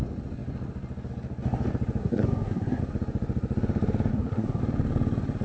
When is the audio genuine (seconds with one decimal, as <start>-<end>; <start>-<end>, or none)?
0.0-2.0; 2.8-4.1; 4.6-5.4